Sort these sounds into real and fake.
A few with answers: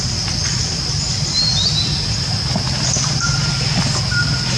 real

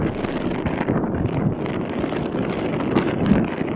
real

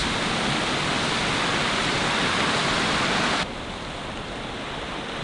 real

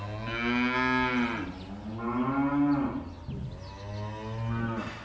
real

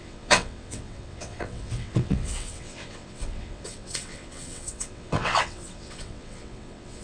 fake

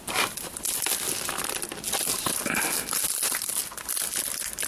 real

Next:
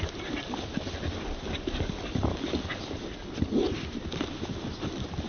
real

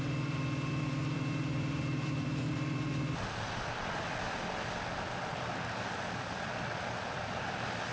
fake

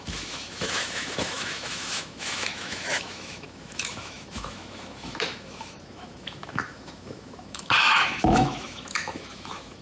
fake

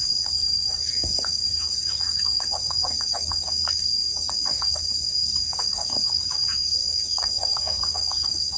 fake